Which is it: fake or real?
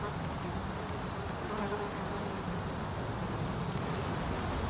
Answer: real